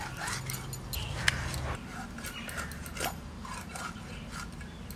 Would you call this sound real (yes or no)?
yes